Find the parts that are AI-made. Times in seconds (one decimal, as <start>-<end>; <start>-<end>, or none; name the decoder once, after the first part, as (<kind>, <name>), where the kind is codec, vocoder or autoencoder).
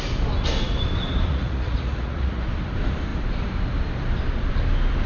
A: 1.3-2.4 (vocoder, Vocos)